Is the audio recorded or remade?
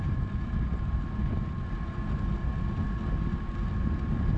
recorded